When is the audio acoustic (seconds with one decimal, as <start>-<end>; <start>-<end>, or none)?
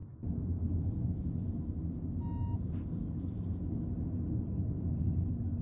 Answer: 0.0-5.6